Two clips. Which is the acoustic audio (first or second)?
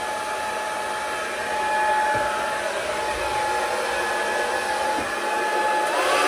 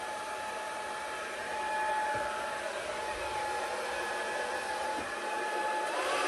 first